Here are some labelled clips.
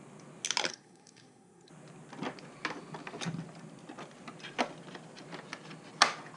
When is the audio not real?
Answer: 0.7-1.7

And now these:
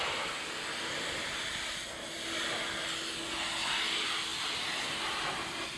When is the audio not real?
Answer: none

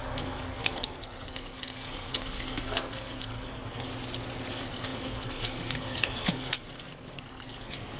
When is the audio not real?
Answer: 0.0-3.9; 4.5-8.0

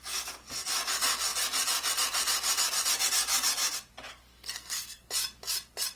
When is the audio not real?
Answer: 4.1-5.1

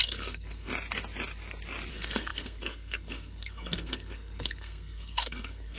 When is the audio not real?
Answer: 0.0-0.7; 1.9-5.8